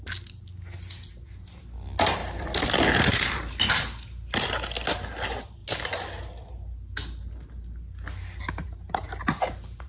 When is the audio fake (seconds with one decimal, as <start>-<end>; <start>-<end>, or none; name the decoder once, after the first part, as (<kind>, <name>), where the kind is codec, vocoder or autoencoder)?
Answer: 2.2-3.7 (vocoder, BigVGAN v2)